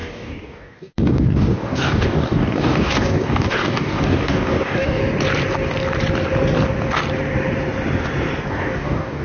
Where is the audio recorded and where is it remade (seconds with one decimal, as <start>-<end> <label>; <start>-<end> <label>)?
0.0-5.0 remade; 5.0-8.5 recorded; 8.5-9.2 remade